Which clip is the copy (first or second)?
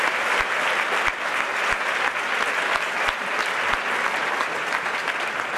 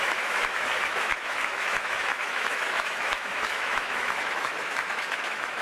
second